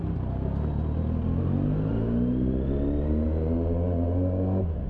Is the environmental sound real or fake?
real